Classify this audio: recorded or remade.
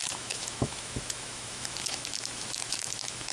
remade